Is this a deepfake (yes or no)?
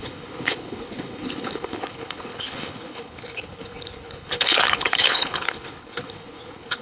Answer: yes